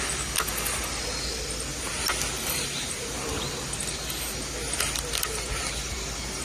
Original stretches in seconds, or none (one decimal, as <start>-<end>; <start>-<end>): 0.0-1.7; 2.2-6.4